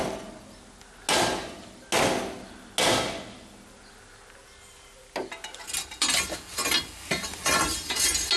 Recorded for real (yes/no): yes